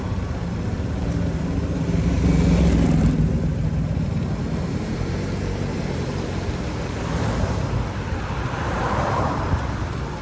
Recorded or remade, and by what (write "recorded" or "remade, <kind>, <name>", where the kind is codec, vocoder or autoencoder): remade, vocoder, BigVGAN v2